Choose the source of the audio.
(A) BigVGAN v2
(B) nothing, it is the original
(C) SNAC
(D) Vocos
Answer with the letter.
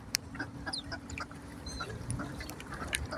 A